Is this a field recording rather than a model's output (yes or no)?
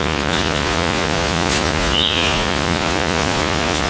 no